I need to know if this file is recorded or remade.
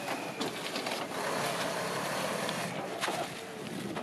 recorded